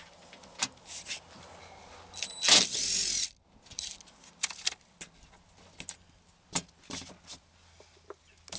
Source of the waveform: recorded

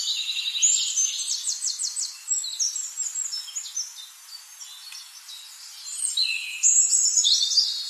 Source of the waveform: recorded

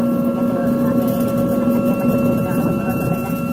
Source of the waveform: recorded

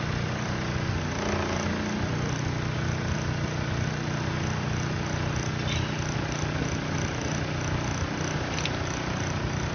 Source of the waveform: recorded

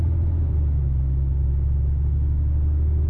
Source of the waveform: recorded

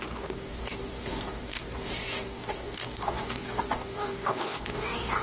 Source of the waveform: remade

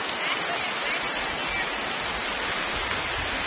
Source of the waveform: recorded